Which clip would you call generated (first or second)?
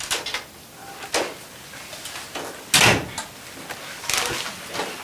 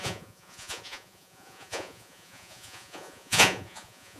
second